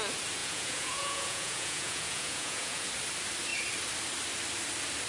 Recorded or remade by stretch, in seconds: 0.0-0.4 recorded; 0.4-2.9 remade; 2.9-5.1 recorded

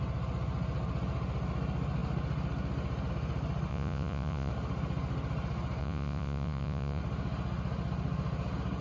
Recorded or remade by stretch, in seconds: 0.0-3.7 recorded; 3.7-4.5 remade; 4.5-5.8 recorded; 5.8-7.0 remade; 7.0-8.8 recorded

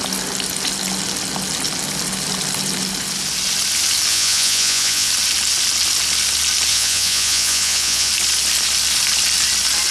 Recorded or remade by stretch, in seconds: 0.0-4.1 recorded; 4.1-5.1 remade; 5.1-6.7 recorded; 6.7-8.1 remade; 8.1-9.9 recorded

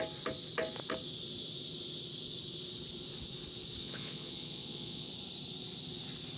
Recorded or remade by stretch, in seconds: 0.0-3.8 recorded; 3.8-5.1 remade; 5.1-6.4 recorded

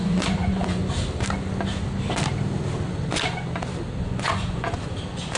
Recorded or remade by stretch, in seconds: 0.0-0.8 remade; 0.8-4.0 recorded; 4.0-5.4 remade

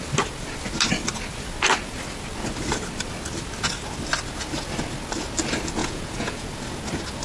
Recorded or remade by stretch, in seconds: 0.0-5.8 recorded; 5.8-6.5 remade; 6.5-7.2 recorded

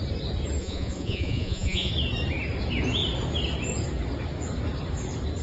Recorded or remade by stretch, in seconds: 0.0-0.6 recorded; 0.6-1.9 remade; 1.9-5.4 recorded

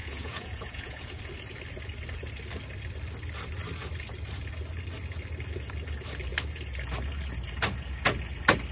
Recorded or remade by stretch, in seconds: 0.0-1.2 remade; 1.2-8.7 recorded